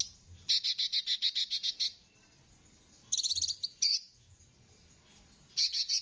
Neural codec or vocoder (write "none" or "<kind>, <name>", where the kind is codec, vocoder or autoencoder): none